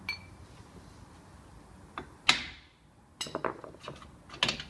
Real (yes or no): yes